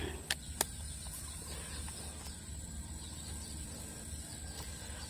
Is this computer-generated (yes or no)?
no